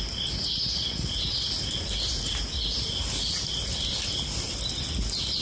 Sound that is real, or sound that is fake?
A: real